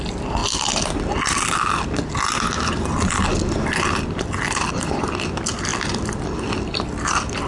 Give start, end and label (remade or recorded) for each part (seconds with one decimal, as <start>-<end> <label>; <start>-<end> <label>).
0.0-0.4 remade; 0.4-4.7 recorded; 4.7-7.5 remade